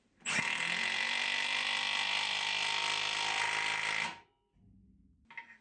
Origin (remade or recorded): recorded